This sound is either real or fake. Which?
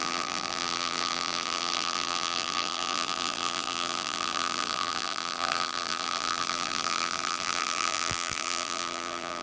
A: fake